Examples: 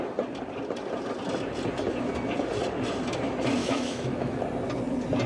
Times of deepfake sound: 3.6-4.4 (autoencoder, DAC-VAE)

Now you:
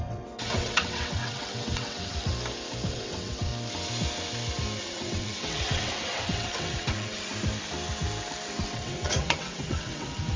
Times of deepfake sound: 0.0-2.3 (vocoder, WaveNeXt); 2.9-3.5; 4.8-7.3; 8.6-10.4

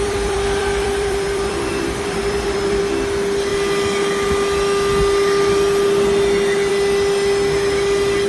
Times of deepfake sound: 0.0-2.8 (vocoder, BigVGAN v2)

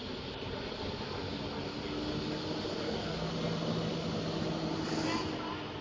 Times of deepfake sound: 2.8-3.3 (codec, SNAC)

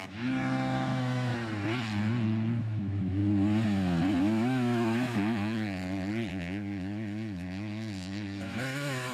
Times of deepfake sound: 0.0-1.3 (autoencoder, DAC-VAE); 2.6-3.2; 4.2-5.8; 6.3-9.1

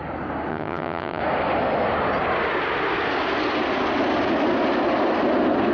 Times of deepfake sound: 0.5-1.2 (vocoder, HiFi-GAN)

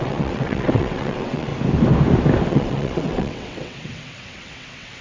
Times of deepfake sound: 0.0-1.5 (vocoder, WaveNeXt); 2.5-5.0

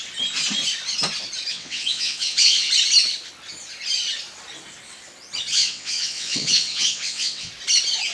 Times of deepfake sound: 1.5-2.7 (vocoder, WaveNeXt); 5.5-7.5